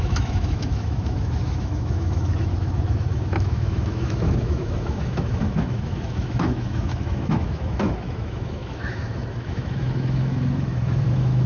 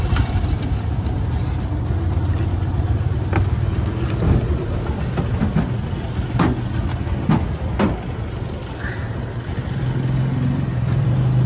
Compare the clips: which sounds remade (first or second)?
first